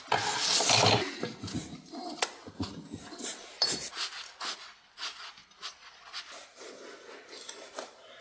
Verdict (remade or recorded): recorded